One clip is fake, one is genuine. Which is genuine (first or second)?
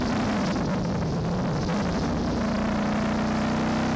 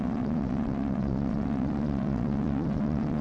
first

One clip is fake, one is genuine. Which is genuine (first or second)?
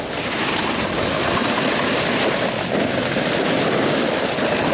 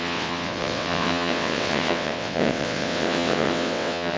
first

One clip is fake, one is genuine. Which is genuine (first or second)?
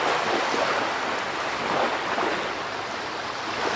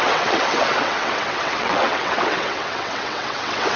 first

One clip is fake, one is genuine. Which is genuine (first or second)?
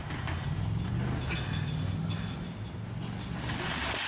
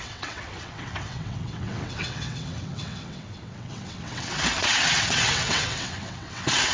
first